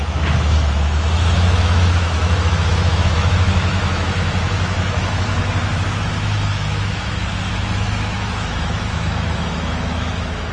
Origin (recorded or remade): remade